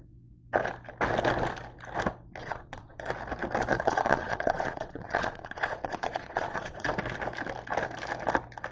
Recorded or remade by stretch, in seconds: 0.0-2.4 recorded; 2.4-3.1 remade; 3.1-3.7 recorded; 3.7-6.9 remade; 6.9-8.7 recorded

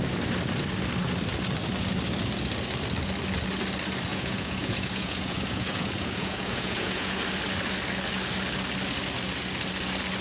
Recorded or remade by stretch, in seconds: 0.0-4.1 recorded; 4.1-7.2 remade; 7.2-10.2 recorded